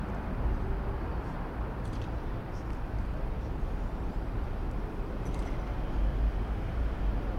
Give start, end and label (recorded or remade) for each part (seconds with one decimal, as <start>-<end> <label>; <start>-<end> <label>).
0.0-1.1 recorded; 1.1-5.4 remade; 5.4-6.1 recorded; 6.1-7.0 remade; 7.0-7.4 recorded